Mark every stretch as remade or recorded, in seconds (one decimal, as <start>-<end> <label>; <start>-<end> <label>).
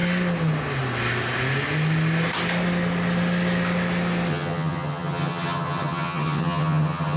0.0-4.3 recorded; 4.3-7.2 remade